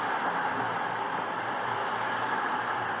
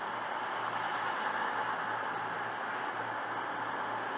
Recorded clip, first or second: second